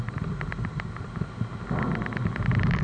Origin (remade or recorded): recorded